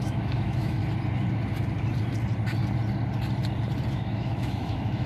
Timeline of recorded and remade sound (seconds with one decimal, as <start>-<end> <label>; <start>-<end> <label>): 0.0-0.8 remade; 0.8-3.9 recorded; 3.9-5.1 remade